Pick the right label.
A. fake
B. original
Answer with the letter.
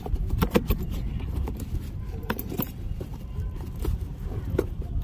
A